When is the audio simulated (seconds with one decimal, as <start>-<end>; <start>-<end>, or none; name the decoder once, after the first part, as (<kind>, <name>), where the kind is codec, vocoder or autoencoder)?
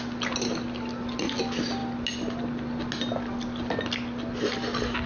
none